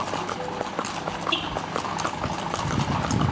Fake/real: real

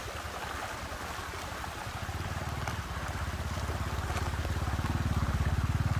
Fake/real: real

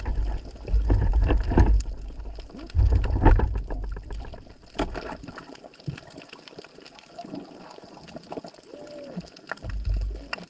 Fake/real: real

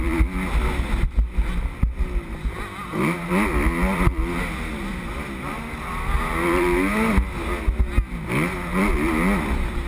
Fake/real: real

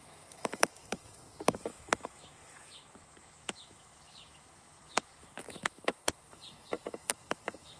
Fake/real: fake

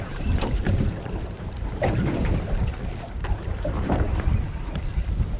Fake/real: fake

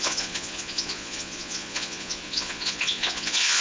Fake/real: fake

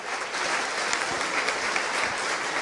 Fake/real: real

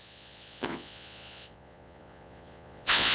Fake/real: fake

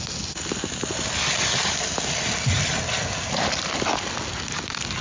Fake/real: real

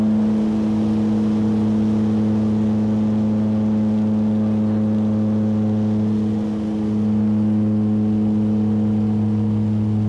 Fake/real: real